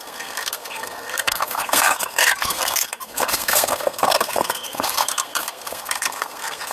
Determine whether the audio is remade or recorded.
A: remade